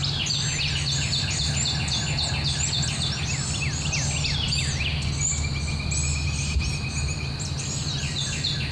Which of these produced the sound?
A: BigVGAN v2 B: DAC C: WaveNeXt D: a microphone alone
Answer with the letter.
D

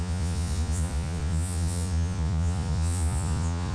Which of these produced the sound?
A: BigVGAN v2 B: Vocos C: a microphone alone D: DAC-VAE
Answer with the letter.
B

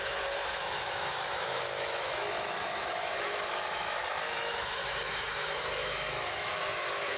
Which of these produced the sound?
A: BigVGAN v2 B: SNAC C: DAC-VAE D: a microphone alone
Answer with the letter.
C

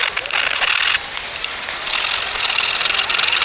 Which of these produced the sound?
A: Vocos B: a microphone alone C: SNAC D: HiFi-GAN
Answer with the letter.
B